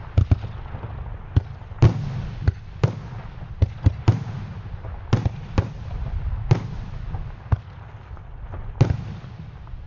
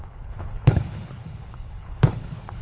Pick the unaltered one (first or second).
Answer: first